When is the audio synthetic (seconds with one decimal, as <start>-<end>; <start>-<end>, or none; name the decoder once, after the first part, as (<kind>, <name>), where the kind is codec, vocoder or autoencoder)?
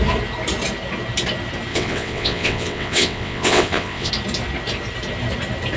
1.7-4.1 (vocoder, WaveNeXt)